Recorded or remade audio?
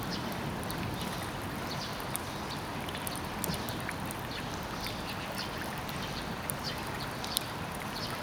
remade